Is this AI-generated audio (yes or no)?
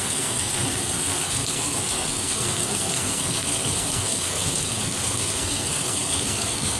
yes